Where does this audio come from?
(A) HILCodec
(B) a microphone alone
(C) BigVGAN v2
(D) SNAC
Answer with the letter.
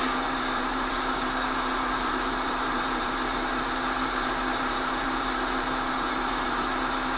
C